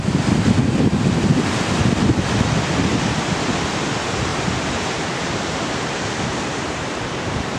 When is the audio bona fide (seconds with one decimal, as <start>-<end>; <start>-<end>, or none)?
0.0-4.3; 7.1-7.6